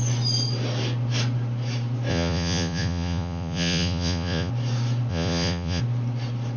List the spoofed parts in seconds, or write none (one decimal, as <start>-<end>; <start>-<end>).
2.1-4.5; 5.1-5.8